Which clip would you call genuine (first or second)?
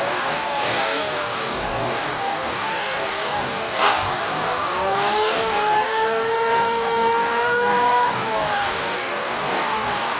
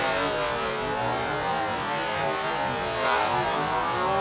second